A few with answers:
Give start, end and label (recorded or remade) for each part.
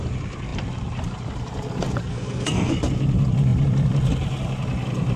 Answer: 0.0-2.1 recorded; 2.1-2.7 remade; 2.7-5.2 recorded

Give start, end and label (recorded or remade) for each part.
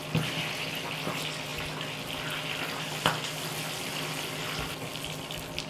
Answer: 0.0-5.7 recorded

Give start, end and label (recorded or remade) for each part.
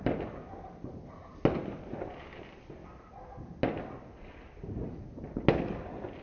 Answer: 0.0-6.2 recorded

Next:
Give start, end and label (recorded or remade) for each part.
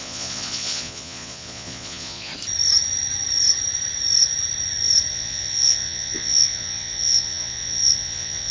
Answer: 0.0-2.3 remade; 2.3-5.1 recorded; 5.1-8.5 remade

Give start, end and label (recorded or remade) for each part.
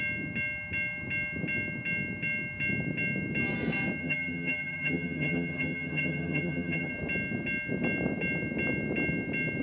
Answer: 0.0-4.0 recorded; 4.0-6.9 remade; 6.9-9.6 recorded